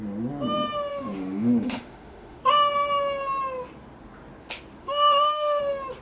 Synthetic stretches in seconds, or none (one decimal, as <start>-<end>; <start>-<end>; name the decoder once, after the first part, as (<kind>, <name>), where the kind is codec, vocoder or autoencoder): 0.9-2.4 (autoencoder, DAC-VAE); 4.8-5.6